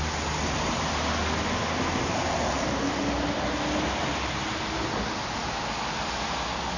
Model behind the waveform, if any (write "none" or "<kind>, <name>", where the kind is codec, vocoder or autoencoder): none